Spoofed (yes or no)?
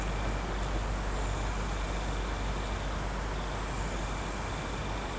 no